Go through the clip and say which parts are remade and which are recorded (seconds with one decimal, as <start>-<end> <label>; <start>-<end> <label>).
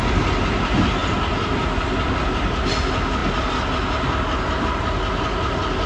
0.0-5.9 recorded